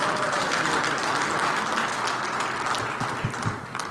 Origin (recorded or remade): recorded